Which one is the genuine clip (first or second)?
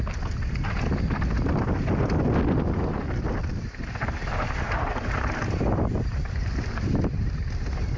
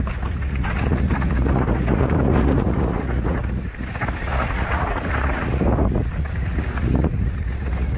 first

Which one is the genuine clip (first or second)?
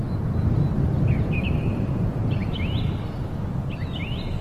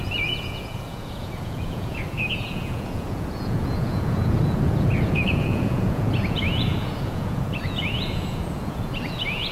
first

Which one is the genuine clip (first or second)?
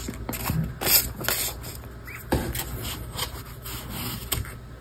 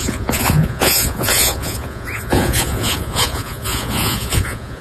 first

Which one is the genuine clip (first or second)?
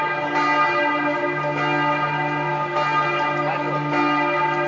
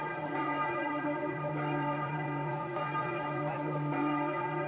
first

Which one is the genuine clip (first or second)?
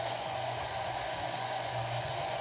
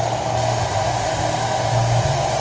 second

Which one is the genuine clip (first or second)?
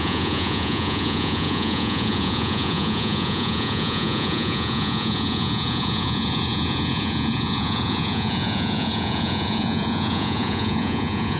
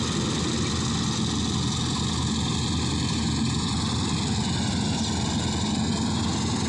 second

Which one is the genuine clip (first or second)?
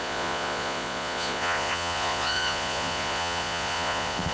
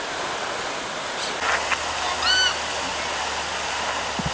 second